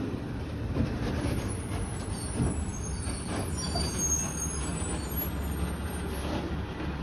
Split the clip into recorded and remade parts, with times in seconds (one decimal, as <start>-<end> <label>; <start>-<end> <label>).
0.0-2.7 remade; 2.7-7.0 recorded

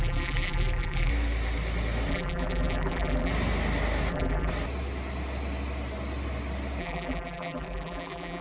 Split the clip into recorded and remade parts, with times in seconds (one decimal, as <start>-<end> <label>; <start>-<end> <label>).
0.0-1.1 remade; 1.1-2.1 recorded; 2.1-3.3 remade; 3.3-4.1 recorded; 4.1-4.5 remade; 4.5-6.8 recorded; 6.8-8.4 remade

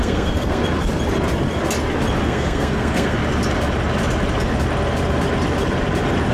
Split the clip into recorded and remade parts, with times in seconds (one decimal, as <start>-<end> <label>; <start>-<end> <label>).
0.0-0.6 remade; 0.6-2.2 recorded; 2.2-3.2 remade; 3.2-6.3 recorded